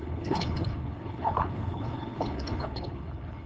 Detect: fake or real fake